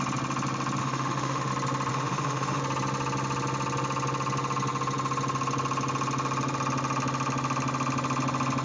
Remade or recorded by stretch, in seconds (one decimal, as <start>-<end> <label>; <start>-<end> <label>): 0.0-0.8 recorded; 0.8-1.5 remade; 1.5-1.9 recorded; 1.9-2.6 remade; 2.6-8.6 recorded